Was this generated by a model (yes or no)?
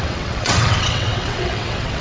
yes